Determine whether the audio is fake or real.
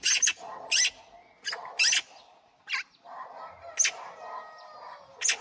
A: real